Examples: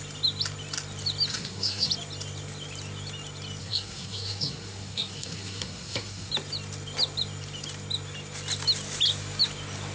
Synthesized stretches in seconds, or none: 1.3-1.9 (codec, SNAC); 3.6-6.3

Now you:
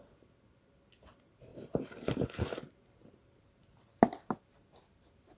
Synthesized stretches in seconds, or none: none